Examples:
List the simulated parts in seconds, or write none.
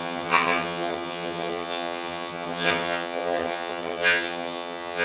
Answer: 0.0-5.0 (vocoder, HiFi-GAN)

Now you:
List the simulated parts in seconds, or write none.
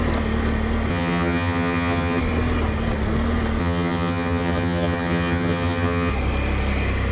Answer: 0.9-2.2 (vocoder, HiFi-GAN); 3.6-6.1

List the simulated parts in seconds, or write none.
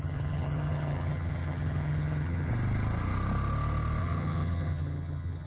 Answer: 0.0-2.5 (vocoder, HiFi-GAN); 4.0-5.5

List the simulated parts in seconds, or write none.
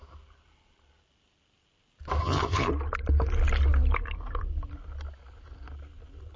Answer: 2.2-2.7 (vocoder, HiFi-GAN)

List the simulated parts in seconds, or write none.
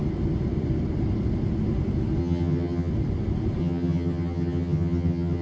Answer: 2.2-2.9 (vocoder, HiFi-GAN); 3.6-5.4